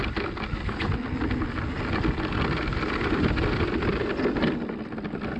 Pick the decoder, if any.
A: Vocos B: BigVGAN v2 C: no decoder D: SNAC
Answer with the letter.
C